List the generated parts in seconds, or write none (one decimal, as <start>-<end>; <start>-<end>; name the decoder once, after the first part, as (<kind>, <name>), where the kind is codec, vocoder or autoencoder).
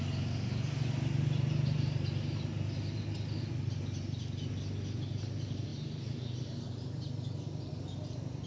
5.7-7.7 (vocoder, BigVGAN v2)